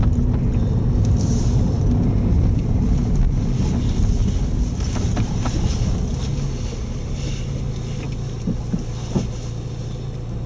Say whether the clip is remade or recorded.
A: recorded